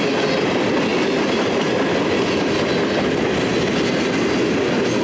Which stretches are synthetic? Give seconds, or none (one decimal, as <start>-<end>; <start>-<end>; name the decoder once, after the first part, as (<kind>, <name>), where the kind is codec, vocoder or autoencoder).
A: none